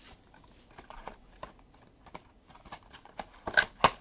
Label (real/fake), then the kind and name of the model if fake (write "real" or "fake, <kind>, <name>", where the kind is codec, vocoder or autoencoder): real